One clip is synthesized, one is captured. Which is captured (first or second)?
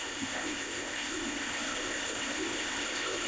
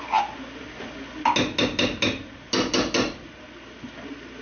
second